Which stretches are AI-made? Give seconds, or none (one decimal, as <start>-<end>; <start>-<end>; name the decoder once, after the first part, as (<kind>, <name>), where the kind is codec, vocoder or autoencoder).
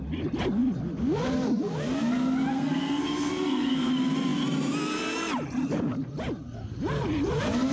2.5-3.9 (codec, SNAC)